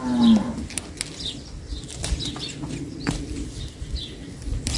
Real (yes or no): yes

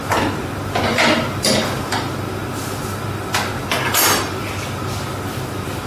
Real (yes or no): yes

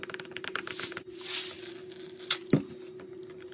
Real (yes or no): yes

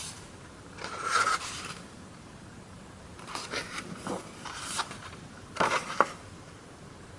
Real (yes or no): no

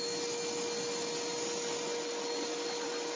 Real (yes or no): yes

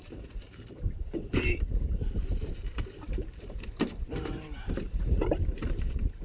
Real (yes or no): no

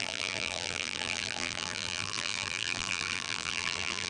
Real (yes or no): no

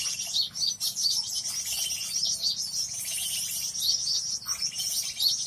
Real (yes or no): yes